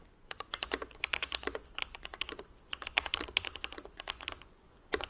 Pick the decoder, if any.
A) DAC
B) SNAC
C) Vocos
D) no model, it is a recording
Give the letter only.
C